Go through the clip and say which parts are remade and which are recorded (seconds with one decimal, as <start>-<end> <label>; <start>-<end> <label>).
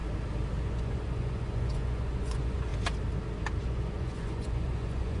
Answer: 0.0-0.6 recorded; 0.6-2.7 remade; 2.7-3.6 recorded; 3.6-5.2 remade